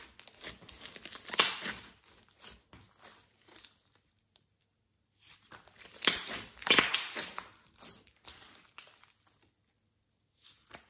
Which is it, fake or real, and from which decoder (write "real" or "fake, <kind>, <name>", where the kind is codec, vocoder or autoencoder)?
real